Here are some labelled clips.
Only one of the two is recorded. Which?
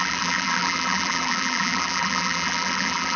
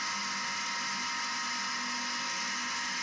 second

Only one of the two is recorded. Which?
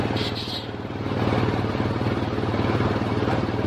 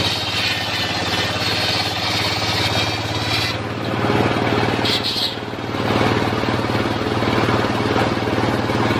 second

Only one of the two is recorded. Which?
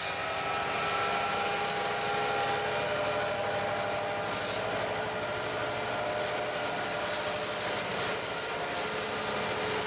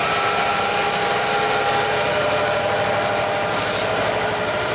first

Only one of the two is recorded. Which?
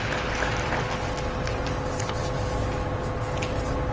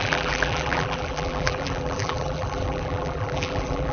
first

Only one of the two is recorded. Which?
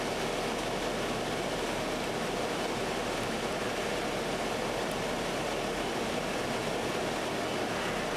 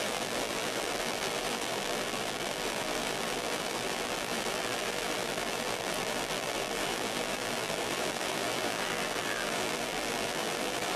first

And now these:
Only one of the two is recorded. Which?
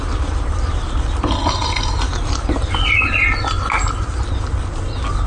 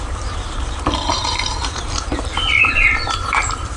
first